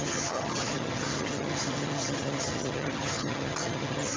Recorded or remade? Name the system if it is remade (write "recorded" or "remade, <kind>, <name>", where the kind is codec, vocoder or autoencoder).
remade, vocoder, HiFi-GAN